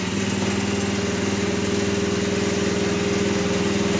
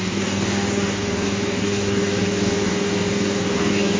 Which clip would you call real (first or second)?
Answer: first